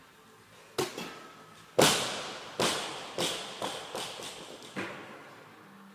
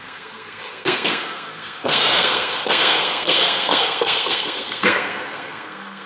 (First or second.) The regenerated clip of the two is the second